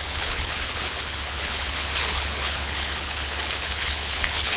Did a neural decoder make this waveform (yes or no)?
yes